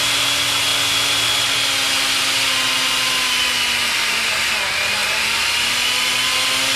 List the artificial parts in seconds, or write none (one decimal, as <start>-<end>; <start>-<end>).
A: 5.0-5.7